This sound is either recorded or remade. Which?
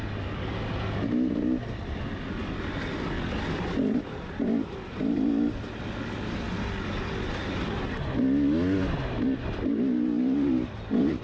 recorded